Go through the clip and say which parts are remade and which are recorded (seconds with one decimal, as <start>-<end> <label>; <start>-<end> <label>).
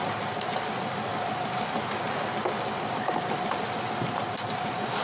0.0-5.0 recorded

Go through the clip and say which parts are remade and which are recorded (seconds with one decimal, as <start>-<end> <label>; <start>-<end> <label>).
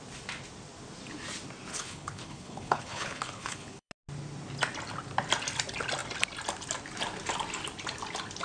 0.0-1.7 recorded; 1.7-3.9 remade; 3.9-8.4 recorded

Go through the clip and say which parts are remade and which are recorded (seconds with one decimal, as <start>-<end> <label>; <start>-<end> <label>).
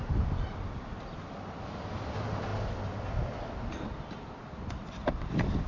0.0-5.7 recorded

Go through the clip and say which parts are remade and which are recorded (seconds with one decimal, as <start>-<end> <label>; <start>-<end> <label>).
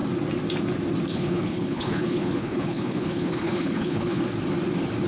0.0-1.1 recorded; 1.1-4.2 remade; 4.2-5.1 recorded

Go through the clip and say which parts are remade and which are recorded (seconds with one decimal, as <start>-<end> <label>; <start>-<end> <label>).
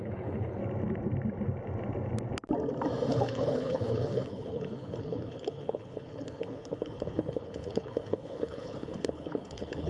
0.0-0.6 remade; 0.6-3.1 recorded; 3.1-9.9 remade